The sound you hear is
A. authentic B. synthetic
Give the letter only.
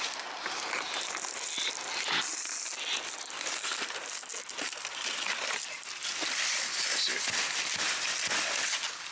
A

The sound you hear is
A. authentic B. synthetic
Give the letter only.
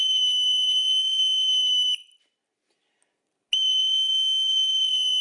A